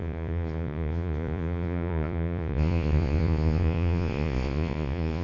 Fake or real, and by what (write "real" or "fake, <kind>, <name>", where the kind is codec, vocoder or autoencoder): fake, vocoder, Vocos